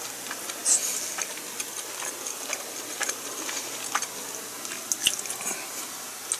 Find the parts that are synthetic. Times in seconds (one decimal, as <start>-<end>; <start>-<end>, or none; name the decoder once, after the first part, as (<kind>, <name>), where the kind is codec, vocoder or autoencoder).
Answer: none